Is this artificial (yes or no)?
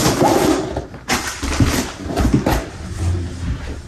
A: no